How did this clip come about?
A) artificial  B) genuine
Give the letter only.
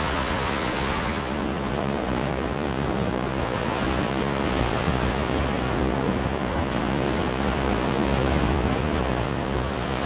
A